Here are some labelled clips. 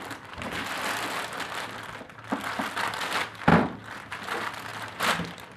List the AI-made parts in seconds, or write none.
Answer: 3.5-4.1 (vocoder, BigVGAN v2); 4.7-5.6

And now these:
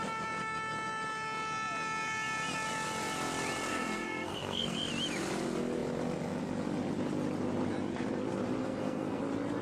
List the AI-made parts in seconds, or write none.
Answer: 3.7-4.9 (codec, SNAC); 8.6-9.2

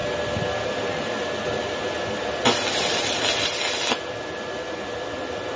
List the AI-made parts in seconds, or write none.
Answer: none

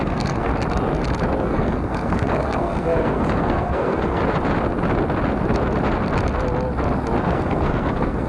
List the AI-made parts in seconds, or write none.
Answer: 0.0-0.5 (codec, SNAC); 1.4-4.2; 7.2-8.3

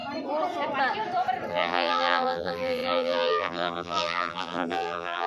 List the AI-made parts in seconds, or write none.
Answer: 1.5-5.3 (vocoder, BigVGAN v2)